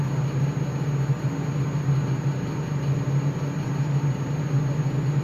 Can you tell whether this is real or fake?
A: real